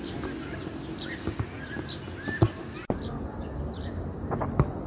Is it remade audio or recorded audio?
recorded